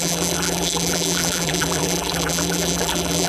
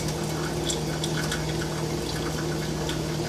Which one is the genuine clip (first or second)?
second